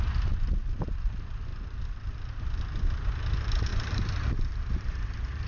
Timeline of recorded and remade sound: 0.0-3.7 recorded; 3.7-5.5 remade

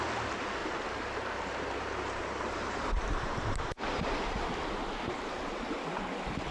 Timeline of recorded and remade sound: 0.0-0.6 recorded; 0.6-4.5 remade; 4.5-6.5 recorded

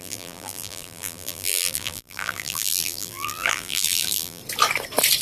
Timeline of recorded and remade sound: 0.0-4.4 remade; 4.4-5.2 recorded

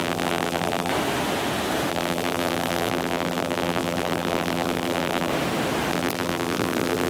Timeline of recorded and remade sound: 0.0-0.9 remade; 0.9-1.9 recorded; 1.9-5.3 remade; 5.3-5.9 recorded; 5.9-7.1 remade